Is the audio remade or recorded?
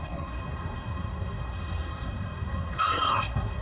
remade